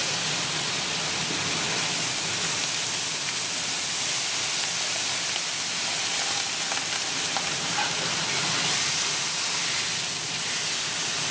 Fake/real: real